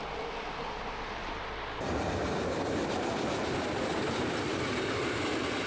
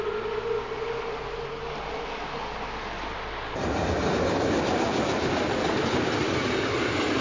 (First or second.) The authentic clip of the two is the second